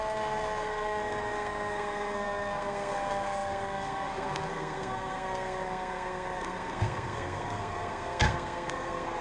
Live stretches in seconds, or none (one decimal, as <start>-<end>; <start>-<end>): none